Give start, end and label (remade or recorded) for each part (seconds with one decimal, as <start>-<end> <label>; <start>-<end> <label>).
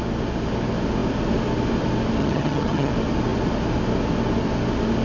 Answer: 0.0-2.2 recorded; 2.2-2.9 remade; 2.9-5.0 recorded